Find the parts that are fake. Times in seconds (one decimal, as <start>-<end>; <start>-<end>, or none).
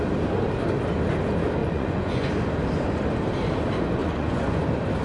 1.6-2.3; 4.0-4.6